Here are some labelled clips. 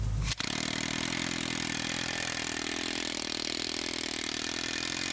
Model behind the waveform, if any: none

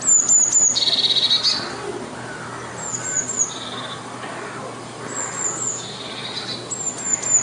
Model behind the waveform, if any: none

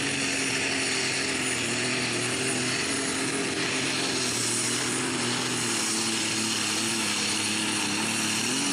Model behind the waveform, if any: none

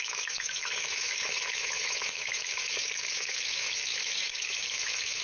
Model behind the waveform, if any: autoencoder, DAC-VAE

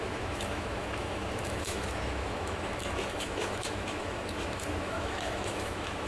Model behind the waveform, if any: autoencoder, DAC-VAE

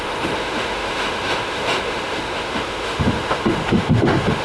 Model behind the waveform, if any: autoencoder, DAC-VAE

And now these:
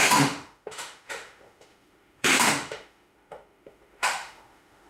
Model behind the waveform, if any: autoencoder, DAC-VAE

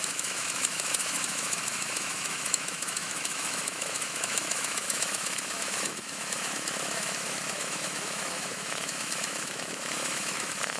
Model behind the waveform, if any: autoencoder, DAC-VAE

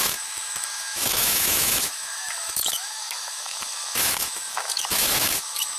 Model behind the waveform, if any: autoencoder, DAC-VAE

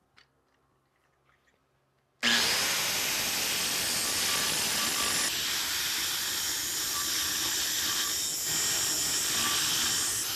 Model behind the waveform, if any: none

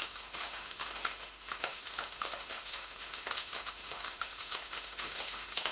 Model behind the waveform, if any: autoencoder, DAC-VAE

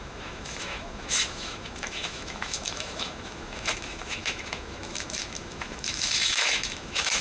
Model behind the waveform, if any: autoencoder, DAC-VAE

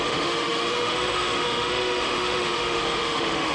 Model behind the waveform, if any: autoencoder, DAC-VAE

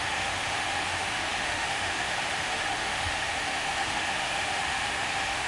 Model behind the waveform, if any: autoencoder, DAC-VAE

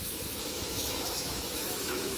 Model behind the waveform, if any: autoencoder, DAC-VAE